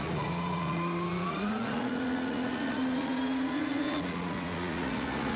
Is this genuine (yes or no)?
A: no